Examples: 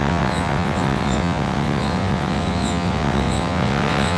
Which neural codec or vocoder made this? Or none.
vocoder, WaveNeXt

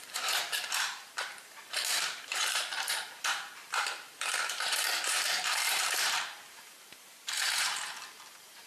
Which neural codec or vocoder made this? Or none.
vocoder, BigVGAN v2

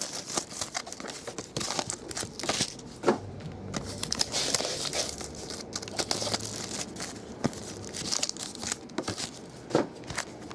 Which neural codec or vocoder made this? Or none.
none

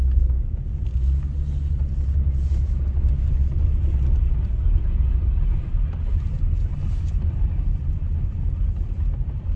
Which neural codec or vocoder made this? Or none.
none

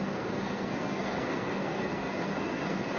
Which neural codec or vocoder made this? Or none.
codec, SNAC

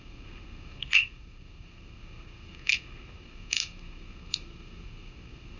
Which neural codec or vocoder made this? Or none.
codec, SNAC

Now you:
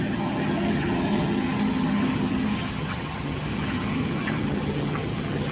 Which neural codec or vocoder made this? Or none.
vocoder, HiFi-GAN